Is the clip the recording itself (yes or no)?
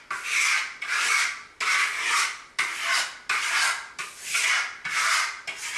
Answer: yes